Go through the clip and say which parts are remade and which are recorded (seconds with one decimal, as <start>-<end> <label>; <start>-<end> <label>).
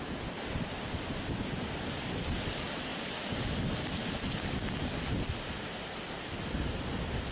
0.0-7.3 recorded